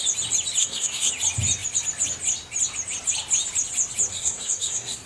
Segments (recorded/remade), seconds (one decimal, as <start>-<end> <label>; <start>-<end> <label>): 0.0-0.6 recorded; 0.6-1.1 remade; 1.1-4.1 recorded; 4.1-5.1 remade